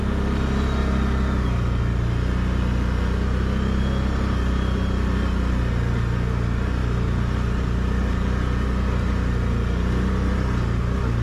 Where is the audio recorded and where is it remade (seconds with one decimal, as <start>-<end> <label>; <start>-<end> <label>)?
0.0-11.2 recorded